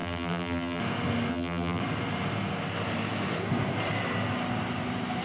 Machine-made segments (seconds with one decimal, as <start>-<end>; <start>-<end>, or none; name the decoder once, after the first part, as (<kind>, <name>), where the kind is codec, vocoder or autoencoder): 0.0-0.8 (vocoder, BigVGAN v2); 1.3-1.8